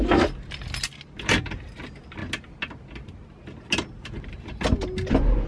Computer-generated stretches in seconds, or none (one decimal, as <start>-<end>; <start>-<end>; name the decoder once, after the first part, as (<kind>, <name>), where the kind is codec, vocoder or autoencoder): none